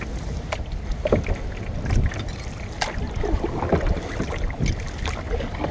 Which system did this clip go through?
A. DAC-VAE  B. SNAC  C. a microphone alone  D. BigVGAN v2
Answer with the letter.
C